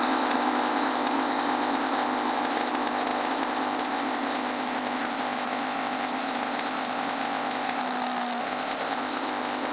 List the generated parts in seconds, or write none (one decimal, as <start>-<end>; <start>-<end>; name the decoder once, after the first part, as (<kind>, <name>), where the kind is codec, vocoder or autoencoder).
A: 0.0-7.8 (codec, ZipCodec); 8.4-9.7